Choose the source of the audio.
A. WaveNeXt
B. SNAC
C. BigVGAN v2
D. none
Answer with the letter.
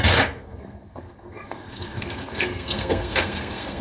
B